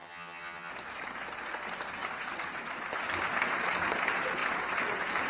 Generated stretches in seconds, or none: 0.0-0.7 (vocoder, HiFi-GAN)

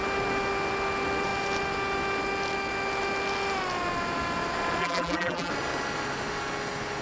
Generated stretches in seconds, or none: 4.8-5.5 (vocoder, BigVGAN v2)

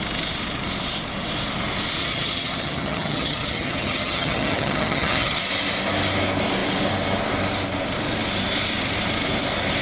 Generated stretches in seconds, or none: 2.0-5.4 (vocoder, HiFi-GAN)